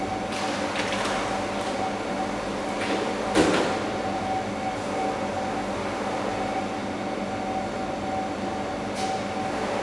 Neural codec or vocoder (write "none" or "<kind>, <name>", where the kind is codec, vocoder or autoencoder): none